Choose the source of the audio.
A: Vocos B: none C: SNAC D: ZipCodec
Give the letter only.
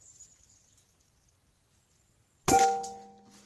B